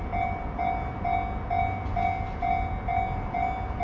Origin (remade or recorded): recorded